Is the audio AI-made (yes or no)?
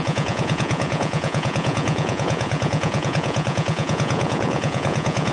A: yes